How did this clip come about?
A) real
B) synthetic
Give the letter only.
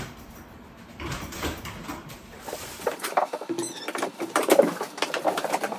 B